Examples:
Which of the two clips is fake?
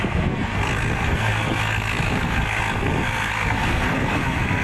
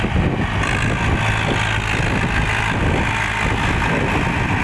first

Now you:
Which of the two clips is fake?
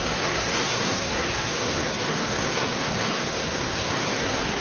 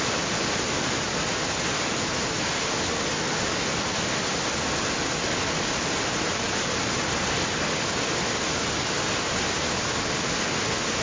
first